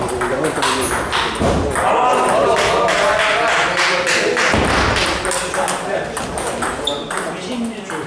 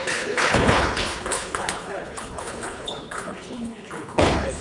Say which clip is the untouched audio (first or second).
first